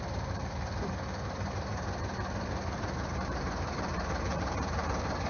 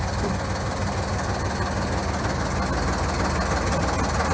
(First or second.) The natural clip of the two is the second